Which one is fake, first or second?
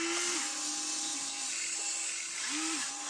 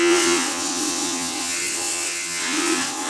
second